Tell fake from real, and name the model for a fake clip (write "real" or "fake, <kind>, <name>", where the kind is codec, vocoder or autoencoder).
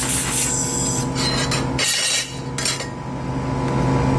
real